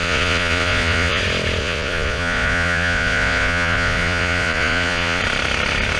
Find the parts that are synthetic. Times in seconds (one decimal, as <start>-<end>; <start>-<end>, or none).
0.0-1.2; 1.6-5.2